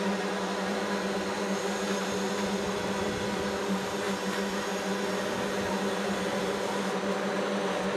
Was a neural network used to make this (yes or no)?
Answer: no